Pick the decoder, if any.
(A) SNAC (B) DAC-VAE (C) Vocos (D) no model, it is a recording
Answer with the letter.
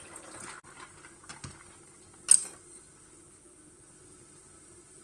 D